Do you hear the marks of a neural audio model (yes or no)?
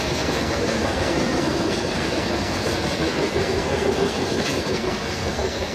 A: yes